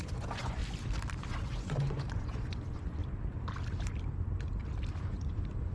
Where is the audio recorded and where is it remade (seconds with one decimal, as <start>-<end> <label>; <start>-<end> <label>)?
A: 0.0-0.6 remade; 0.6-1.3 recorded; 1.3-3.0 remade; 3.0-5.0 recorded; 5.0-5.7 remade